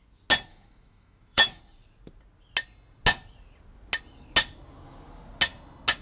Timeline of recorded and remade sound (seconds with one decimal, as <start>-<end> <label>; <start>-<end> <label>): 0.0-0.5 recorded; 0.5-1.6 remade; 1.6-6.0 recorded